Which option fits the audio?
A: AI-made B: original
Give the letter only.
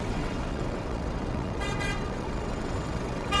A